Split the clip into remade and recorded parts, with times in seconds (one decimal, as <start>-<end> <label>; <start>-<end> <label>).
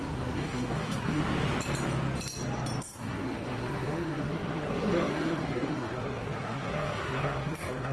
0.0-1.2 remade; 1.2-2.8 recorded; 2.8-7.9 remade